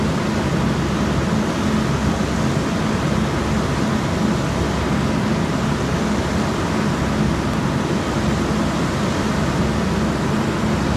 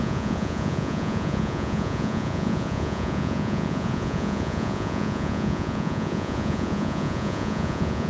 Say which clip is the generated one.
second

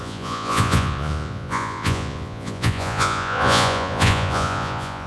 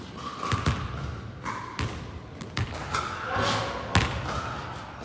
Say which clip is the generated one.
first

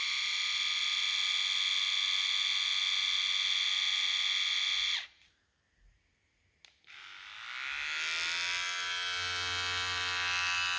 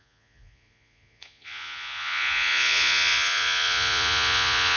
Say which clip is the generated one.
second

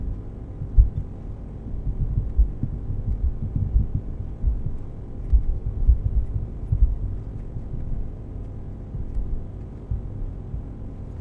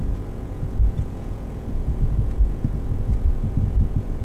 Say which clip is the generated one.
second